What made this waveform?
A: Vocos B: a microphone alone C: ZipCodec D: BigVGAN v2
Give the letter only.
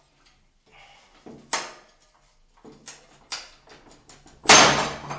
B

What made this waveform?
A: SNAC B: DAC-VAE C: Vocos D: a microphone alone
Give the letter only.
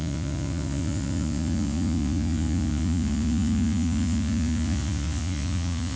C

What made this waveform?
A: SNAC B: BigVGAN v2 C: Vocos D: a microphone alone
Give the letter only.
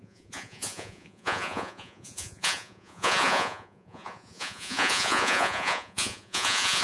C